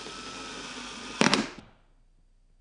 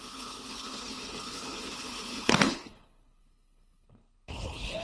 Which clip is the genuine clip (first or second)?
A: first